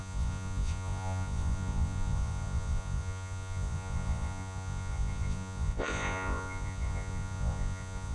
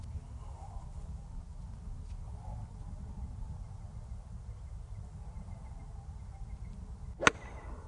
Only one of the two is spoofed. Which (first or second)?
first